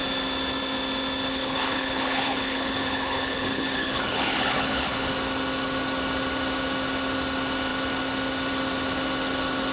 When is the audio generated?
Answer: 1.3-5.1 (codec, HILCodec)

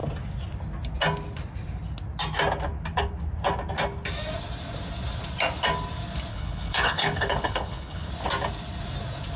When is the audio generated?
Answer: 6.3-8.1 (codec, HILCodec)

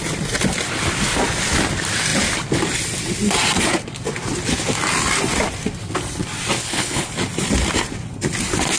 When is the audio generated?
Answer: 6.6-7.1 (codec, HILCodec)

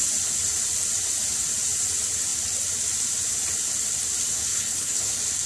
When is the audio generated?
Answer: 4.5-5.1 (codec, HILCodec)

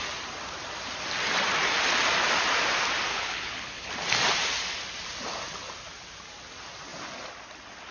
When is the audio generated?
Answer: 3.1-3.9 (codec, HILCodec)

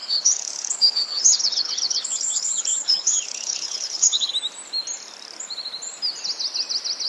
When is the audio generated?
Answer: 0.0-4.3 (codec, HILCodec)

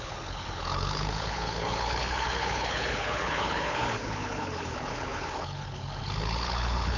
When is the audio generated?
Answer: 0.0-7.0 (codec, HILCodec)

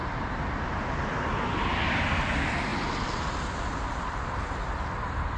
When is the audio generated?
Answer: none